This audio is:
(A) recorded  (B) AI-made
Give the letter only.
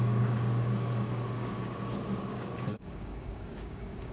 B